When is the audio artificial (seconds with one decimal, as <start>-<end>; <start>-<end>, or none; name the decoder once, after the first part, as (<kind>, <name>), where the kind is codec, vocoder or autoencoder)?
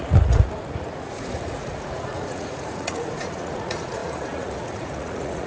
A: 0.0-5.5 (vocoder, Vocos)